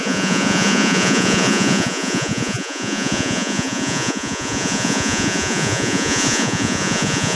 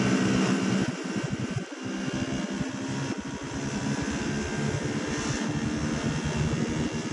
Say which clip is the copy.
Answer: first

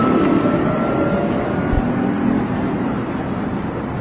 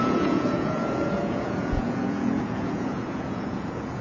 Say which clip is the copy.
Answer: second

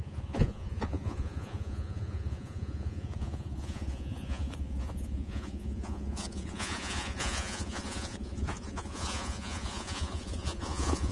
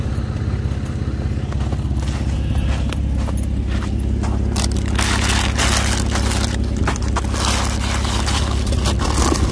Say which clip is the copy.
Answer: first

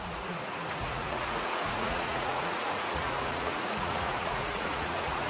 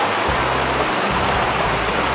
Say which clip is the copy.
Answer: first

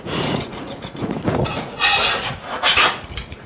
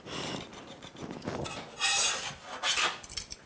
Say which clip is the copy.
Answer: first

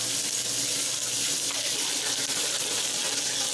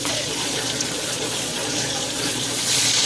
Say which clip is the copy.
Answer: second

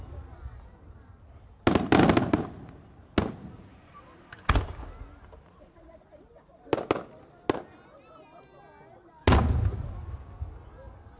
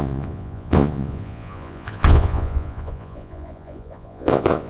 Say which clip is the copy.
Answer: second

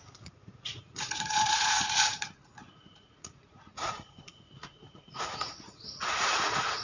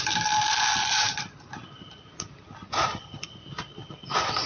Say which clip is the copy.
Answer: first